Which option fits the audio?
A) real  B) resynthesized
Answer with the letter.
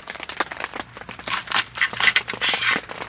A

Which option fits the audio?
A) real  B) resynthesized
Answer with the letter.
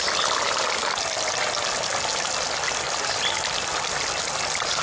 A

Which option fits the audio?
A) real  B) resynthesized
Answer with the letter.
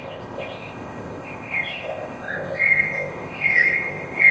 B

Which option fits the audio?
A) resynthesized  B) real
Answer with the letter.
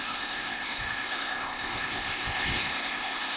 A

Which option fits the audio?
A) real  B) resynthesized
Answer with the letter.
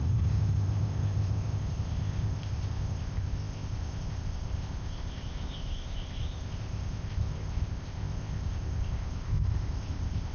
B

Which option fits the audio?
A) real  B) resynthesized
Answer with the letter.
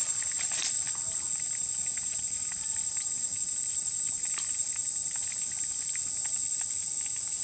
A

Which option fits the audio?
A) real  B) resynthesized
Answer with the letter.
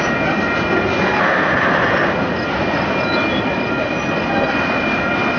A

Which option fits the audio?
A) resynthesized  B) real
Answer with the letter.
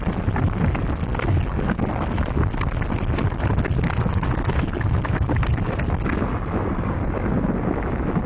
B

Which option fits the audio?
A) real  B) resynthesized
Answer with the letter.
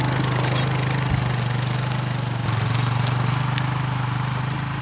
A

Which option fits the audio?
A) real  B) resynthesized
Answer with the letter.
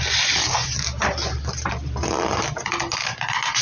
A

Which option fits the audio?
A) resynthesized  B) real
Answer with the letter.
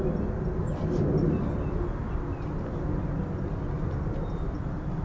B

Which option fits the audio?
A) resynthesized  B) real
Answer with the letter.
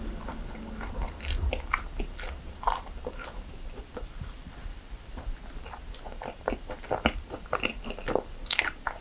B